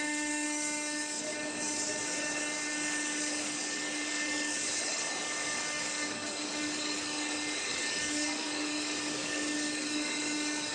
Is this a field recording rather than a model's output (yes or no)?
no